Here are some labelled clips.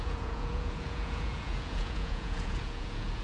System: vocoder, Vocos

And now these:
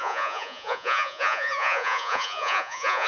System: vocoder, Vocos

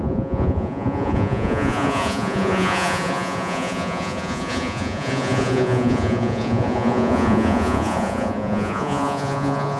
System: vocoder, Vocos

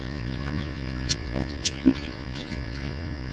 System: vocoder, Vocos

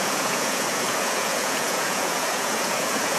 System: vocoder, Vocos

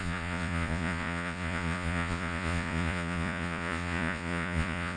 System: vocoder, Vocos